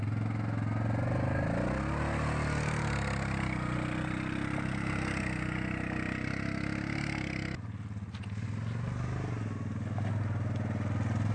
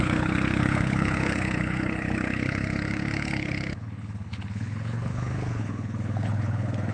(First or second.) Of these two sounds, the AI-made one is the second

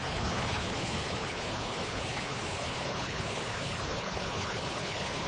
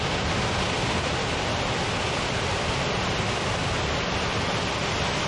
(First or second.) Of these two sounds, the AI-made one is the first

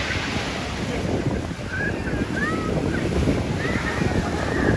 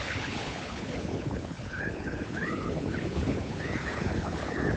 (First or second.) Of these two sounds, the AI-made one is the second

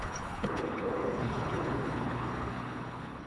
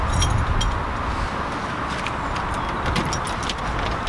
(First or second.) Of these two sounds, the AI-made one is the first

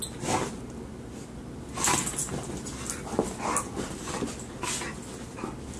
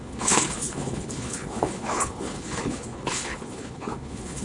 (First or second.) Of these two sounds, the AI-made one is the second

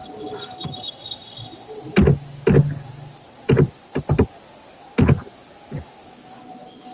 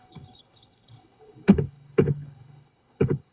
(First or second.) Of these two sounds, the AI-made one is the second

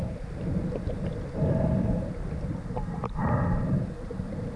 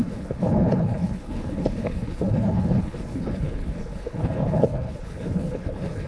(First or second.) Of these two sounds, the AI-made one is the second